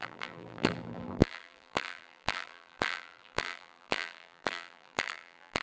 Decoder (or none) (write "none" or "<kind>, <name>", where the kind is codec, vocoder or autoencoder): vocoder, BigVGAN v2